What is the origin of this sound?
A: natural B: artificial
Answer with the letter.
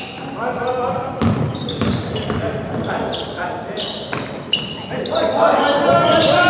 A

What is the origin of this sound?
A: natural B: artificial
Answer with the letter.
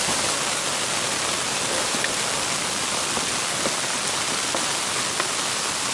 A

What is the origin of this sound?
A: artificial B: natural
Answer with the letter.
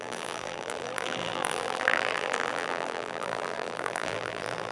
A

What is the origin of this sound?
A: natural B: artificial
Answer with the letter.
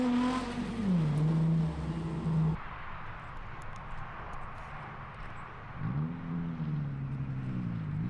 A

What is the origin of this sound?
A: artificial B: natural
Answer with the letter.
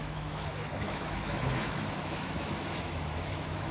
A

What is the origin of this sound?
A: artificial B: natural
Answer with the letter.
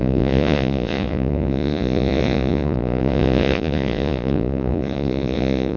A